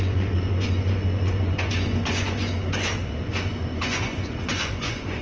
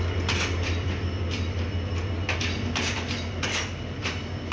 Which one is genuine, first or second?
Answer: second